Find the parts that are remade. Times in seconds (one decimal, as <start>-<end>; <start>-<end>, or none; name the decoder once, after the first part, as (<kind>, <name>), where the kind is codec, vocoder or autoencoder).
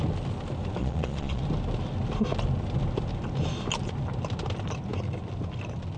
0.8-1.4 (vocoder, Vocos)